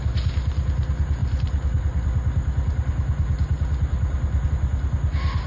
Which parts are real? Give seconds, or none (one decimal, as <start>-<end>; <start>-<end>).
0.0-5.5